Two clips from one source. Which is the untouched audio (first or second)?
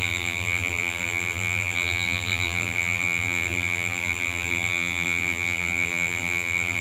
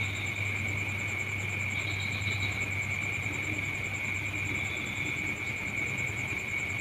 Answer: second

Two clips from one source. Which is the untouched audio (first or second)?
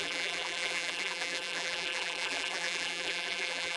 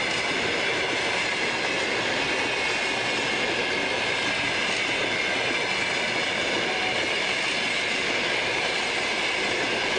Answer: second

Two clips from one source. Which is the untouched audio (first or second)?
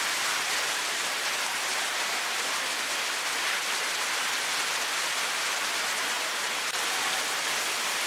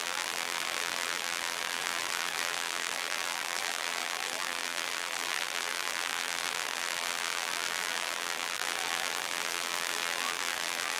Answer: first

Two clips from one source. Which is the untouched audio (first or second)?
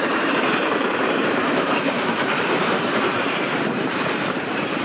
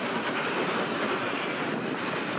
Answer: second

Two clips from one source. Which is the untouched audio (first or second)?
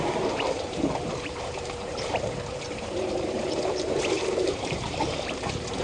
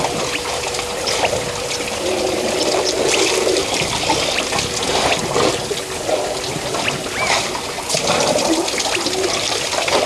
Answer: second